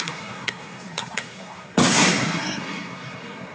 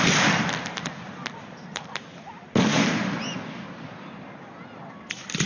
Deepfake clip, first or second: first